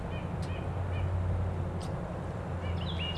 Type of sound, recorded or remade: recorded